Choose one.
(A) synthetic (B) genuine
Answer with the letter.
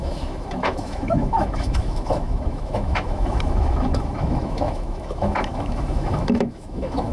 A